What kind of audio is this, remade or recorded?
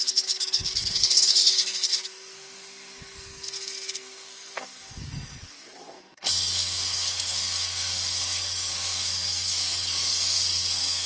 remade